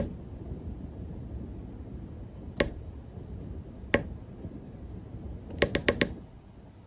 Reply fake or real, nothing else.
real